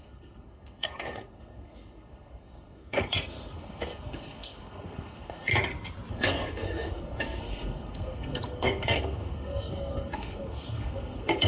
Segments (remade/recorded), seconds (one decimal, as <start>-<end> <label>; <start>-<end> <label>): 0.0-5.5 remade; 5.5-6.1 recorded; 6.1-11.5 remade